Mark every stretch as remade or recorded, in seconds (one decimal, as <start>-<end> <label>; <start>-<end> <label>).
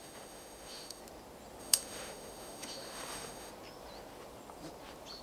0.0-1.0 remade; 1.0-1.6 recorded; 1.6-3.5 remade; 3.5-5.2 recorded